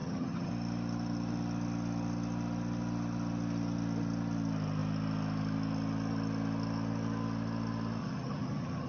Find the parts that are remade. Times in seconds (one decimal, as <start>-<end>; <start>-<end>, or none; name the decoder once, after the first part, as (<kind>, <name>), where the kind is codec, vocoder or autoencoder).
0.0-0.5 (vocoder, HiFi-GAN); 8.0-8.9